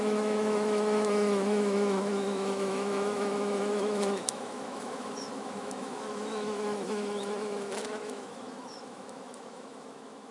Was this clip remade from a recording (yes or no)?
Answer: yes